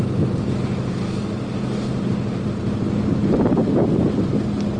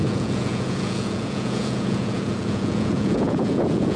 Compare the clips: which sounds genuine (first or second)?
first